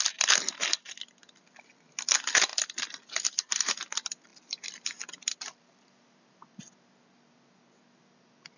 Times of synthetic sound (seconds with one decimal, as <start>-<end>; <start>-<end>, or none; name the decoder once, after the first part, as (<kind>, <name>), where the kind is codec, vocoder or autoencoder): none